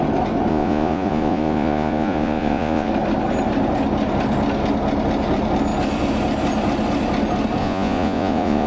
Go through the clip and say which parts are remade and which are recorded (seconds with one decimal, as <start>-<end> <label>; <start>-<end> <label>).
0.0-0.5 recorded; 0.5-2.9 remade; 2.9-7.6 recorded; 7.6-8.7 remade